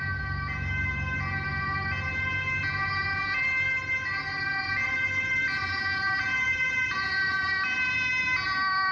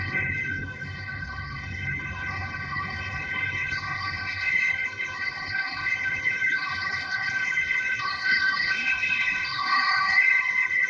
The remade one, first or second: second